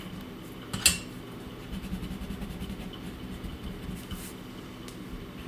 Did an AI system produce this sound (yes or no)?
no